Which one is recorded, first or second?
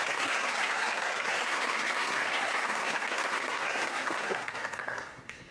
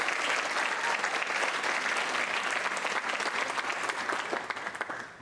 second